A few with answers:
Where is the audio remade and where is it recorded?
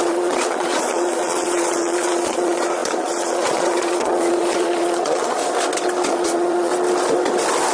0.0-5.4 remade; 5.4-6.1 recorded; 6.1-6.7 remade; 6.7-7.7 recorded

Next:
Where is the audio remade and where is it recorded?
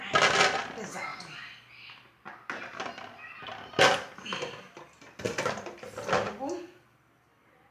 0.0-7.7 recorded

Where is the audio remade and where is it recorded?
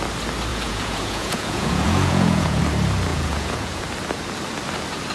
0.0-0.5 recorded; 0.5-2.6 remade; 2.6-3.1 recorded; 3.1-3.8 remade; 3.8-5.1 recorded